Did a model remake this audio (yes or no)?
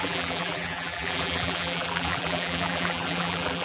yes